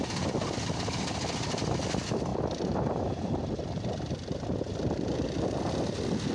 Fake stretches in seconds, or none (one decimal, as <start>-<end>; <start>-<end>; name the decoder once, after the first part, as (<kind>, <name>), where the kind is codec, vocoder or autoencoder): none